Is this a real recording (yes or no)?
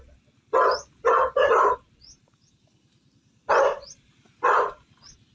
yes